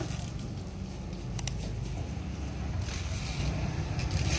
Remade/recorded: recorded